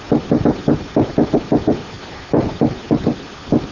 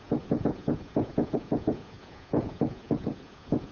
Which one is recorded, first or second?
first